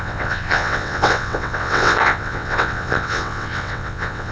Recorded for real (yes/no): no